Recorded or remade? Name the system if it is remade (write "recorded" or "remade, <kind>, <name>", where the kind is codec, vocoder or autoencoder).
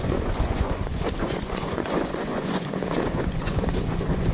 remade, vocoder, Vocos